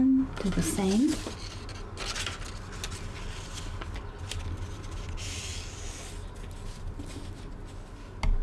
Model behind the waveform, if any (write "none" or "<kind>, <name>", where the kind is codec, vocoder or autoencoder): none